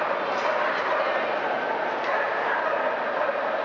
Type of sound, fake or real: real